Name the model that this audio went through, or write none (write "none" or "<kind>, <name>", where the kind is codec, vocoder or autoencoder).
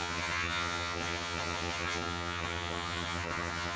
vocoder, HiFi-GAN